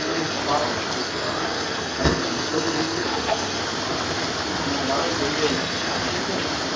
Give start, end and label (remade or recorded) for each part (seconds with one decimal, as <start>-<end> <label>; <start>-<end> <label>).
0.0-0.4 remade; 0.4-1.0 recorded; 1.0-3.6 remade; 3.6-5.5 recorded; 5.5-6.0 remade; 6.0-6.8 recorded